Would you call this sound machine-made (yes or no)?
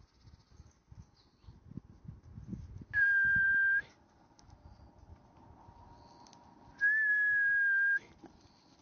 no